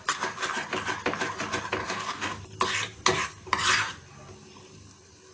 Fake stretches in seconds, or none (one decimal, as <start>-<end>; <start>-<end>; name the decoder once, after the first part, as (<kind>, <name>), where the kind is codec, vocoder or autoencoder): 1.8-2.4 (codec, DAC)